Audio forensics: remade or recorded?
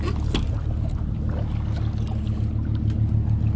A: recorded